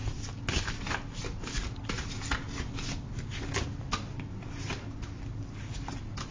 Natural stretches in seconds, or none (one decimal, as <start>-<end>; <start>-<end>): 0.0-6.3